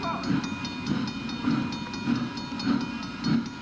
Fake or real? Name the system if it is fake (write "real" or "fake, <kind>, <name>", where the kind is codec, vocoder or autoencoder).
real